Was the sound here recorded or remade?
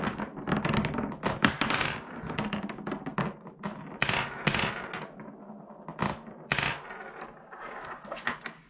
recorded